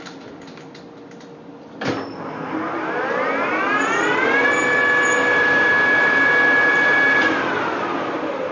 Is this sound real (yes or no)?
yes